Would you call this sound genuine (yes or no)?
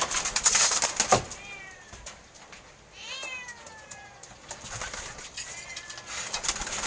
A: yes